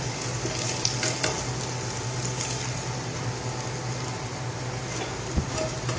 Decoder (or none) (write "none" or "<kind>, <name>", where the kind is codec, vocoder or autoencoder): none